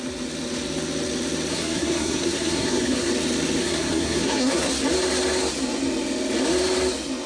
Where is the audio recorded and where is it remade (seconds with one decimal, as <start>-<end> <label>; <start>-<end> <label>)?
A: 0.0-1.5 recorded; 1.5-3.1 remade; 3.1-3.6 recorded; 3.6-4.7 remade; 4.7-7.3 recorded